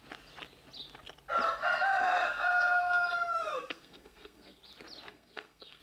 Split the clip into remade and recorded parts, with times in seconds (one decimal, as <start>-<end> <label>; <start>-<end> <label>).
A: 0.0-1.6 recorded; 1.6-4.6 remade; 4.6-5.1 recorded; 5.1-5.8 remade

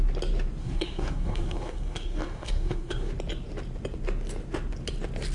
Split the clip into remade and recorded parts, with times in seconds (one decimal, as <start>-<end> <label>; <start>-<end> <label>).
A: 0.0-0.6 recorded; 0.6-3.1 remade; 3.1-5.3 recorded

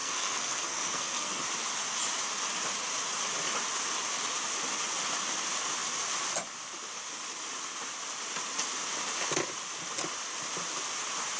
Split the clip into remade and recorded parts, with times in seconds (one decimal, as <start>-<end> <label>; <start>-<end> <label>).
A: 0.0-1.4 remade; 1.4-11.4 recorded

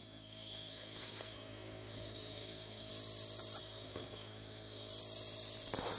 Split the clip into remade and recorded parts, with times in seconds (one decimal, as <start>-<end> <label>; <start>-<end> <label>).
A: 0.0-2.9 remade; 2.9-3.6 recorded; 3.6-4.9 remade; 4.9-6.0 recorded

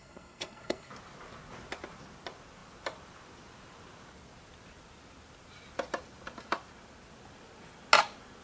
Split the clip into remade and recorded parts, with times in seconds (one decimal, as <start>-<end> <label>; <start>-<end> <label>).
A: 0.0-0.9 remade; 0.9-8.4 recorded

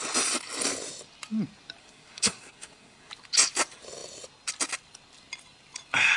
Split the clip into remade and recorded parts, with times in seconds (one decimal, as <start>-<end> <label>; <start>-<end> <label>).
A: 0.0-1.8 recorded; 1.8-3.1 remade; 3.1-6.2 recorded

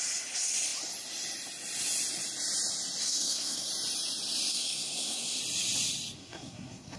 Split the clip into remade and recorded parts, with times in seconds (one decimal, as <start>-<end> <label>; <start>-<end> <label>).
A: 0.0-3.0 recorded; 3.0-3.7 remade; 3.7-4.5 recorded; 4.5-5.4 remade; 5.4-6.2 recorded; 6.2-7.0 remade